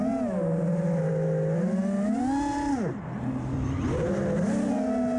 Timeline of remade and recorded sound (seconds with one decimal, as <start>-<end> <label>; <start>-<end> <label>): 0.0-5.2 recorded